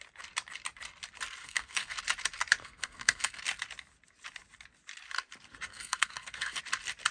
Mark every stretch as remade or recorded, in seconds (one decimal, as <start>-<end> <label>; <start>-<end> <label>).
0.0-1.4 recorded; 1.4-2.0 remade; 2.0-2.6 recorded; 2.6-3.4 remade; 3.4-5.7 recorded; 5.7-6.6 remade; 6.6-7.1 recorded